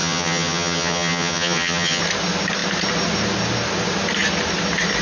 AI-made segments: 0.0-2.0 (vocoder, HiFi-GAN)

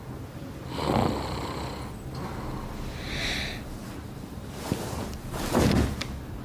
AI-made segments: 3.8-5.0 (vocoder, BigVGAN v2)

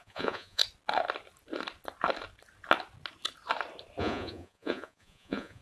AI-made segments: 0.0-0.6 (vocoder, Vocos); 4.0-5.6

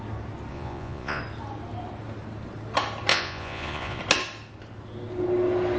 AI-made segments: 0.5-1.2 (vocoder, Vocos); 3.1-4.0

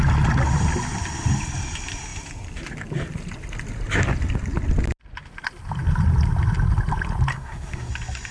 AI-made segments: 7.3-7.9 (codec, SNAC)

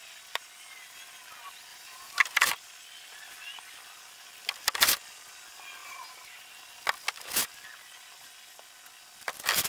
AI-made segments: 1.7-2.5 (vocoder, BigVGAN v2); 5.8-6.6